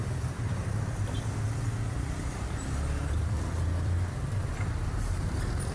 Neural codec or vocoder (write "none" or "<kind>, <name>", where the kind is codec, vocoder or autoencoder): vocoder, BigVGAN v2